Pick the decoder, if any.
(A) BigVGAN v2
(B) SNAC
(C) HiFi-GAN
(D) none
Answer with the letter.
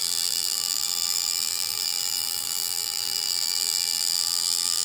A